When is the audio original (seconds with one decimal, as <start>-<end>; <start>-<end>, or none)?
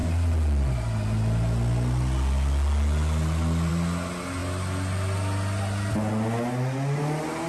0.0-7.5